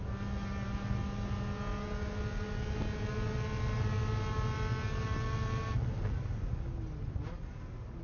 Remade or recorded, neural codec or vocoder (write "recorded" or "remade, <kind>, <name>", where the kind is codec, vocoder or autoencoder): recorded